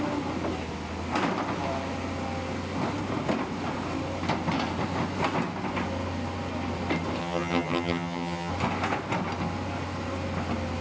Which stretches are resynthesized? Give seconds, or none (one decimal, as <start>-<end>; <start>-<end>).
7.2-8.5